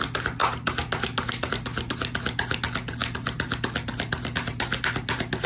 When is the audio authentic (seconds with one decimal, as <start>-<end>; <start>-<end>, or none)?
0.0-5.5